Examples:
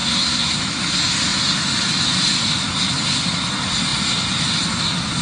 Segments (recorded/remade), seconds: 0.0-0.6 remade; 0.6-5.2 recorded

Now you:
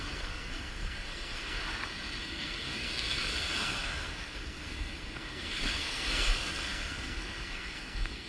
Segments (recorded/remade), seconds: 0.0-1.6 remade; 1.6-2.2 recorded; 2.2-8.3 remade

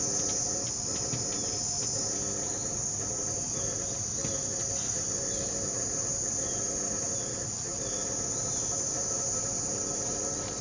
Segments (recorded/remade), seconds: 0.0-10.6 recorded